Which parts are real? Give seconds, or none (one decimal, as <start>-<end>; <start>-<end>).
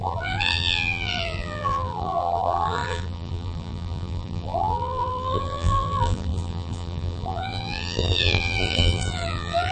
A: none